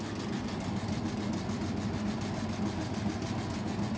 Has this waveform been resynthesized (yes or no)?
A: no